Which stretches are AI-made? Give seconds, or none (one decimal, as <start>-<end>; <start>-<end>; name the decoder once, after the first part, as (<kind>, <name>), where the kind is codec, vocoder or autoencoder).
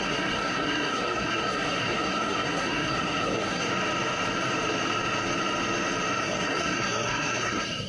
0.0-3.7 (codec, SNAC); 6.2-7.9